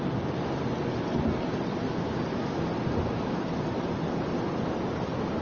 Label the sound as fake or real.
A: real